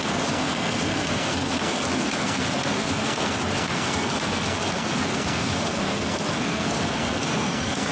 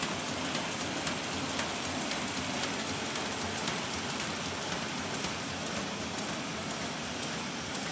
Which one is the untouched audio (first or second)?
second